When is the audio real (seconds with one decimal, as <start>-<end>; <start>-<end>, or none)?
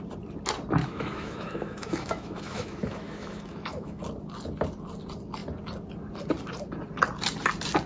0.0-0.8; 4.0-7.9